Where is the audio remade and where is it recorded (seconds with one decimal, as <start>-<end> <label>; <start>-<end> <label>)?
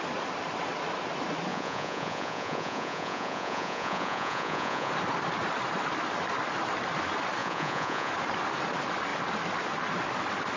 0.0-1.5 recorded; 1.5-4.9 remade; 4.9-7.4 recorded; 7.4-8.1 remade; 8.1-10.6 recorded